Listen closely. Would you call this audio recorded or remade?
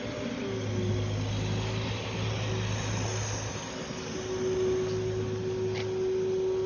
recorded